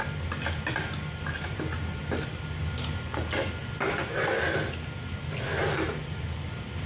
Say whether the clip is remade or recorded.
recorded